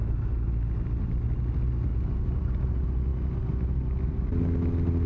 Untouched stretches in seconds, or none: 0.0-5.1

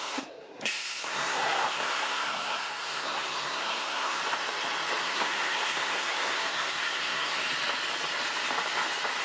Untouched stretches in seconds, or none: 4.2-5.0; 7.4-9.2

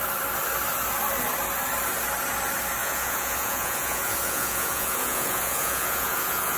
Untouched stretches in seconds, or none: 0.0-2.8

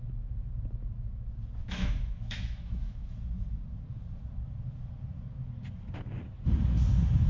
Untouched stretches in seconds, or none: 0.0-1.6; 3.1-7.3

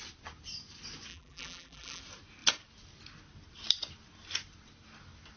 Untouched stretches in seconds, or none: 0.0-1.1; 2.0-5.4

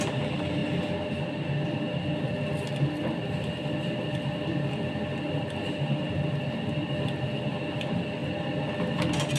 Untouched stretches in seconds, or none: 0.0-8.2; 9.0-9.4

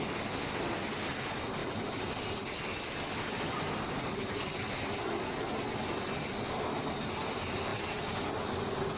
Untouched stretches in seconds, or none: 0.0-9.0